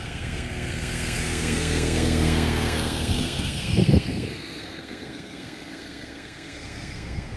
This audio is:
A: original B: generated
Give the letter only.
B